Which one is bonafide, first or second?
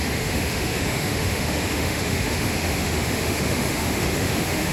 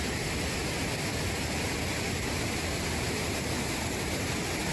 second